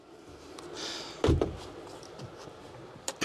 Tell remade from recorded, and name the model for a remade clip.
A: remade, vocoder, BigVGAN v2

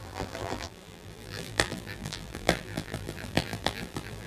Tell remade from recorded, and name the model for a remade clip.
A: remade, vocoder, BigVGAN v2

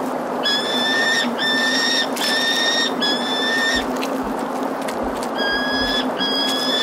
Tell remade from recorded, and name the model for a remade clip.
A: remade, vocoder, BigVGAN v2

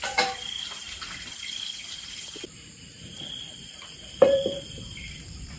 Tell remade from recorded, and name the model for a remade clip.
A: remade, vocoder, BigVGAN v2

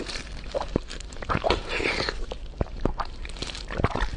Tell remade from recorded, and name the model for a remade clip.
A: remade, vocoder, BigVGAN v2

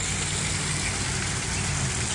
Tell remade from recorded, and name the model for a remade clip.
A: recorded